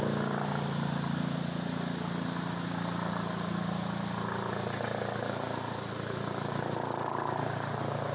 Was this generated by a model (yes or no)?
no